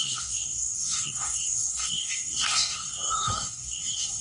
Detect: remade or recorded remade